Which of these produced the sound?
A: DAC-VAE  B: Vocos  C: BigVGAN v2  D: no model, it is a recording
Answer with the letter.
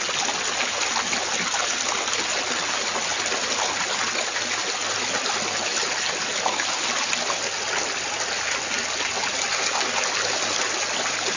D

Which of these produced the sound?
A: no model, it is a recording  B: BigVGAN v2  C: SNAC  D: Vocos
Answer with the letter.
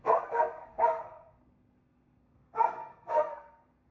C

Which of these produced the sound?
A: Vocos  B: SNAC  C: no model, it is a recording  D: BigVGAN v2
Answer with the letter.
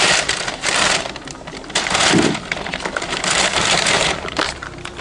D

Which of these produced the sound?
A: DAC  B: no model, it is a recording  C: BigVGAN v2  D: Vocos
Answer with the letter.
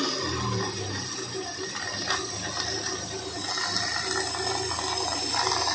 B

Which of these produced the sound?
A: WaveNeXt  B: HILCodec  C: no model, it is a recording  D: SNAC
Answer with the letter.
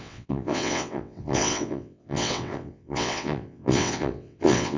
A